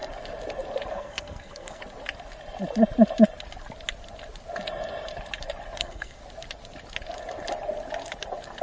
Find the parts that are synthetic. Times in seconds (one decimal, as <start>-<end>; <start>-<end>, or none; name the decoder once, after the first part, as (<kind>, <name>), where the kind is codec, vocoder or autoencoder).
0.9-1.8 (codec, SNAC); 5.8-6.2